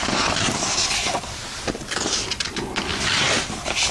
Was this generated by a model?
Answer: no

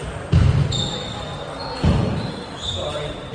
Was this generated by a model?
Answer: no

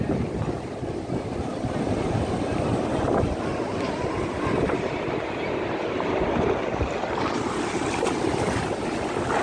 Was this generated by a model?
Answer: no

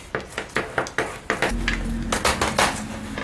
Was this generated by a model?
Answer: no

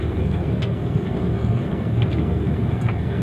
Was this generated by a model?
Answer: yes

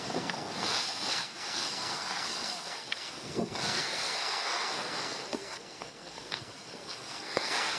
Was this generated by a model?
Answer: yes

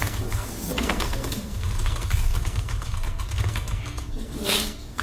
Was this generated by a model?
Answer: yes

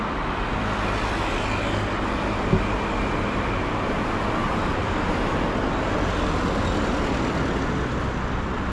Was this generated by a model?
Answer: no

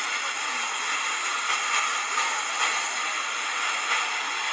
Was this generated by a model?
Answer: no